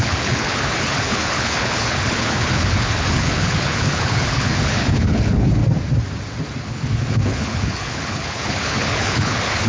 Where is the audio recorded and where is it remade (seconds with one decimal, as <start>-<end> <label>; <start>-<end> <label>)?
0.0-5.6 remade; 5.6-6.6 recorded; 6.6-9.7 remade